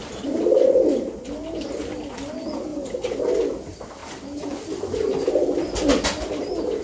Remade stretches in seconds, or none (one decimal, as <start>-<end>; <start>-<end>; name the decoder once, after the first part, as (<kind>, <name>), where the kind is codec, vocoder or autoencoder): none